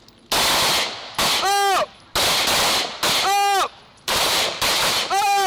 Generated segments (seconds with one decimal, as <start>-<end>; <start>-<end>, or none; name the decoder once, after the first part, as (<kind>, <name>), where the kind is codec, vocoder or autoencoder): 3.9-5.5 (vocoder, BigVGAN v2)